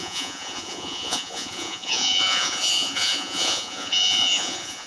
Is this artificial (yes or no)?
yes